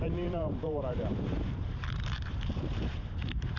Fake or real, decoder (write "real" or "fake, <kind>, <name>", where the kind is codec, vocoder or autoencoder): fake, vocoder, BigVGAN v2